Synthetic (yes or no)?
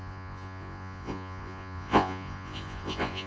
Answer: yes